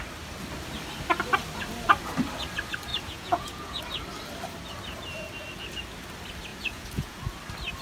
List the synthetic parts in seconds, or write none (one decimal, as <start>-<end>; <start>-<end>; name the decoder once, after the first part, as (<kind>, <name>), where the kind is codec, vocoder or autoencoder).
2.9-3.8 (vocoder, Vocos); 6.5-7.2